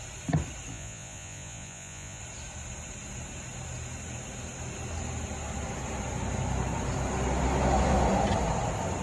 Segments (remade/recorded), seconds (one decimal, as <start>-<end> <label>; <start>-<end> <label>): 0.0-0.7 recorded; 0.7-2.2 remade; 2.2-9.0 recorded